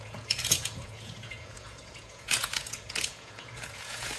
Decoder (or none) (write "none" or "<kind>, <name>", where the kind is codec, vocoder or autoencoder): vocoder, Vocos